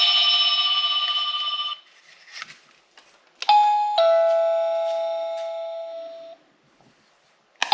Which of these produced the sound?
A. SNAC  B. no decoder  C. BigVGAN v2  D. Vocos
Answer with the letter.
B